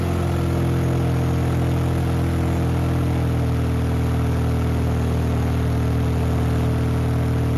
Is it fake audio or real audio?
real